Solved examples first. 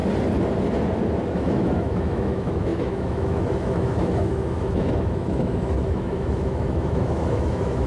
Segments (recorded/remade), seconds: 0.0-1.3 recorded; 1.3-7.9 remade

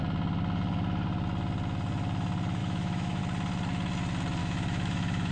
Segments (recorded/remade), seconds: 0.0-2.6 recorded; 2.6-3.2 remade; 3.2-4.4 recorded; 4.4-5.3 remade

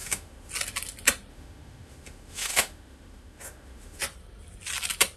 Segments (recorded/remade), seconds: 0.0-0.5 remade; 0.5-1.3 recorded; 1.3-4.0 remade; 4.0-5.2 recorded

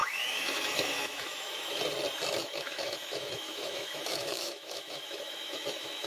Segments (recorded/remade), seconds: 0.0-1.8 remade; 1.8-2.4 recorded; 2.4-6.1 remade

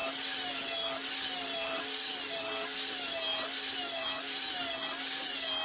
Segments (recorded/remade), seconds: 0.0-5.6 recorded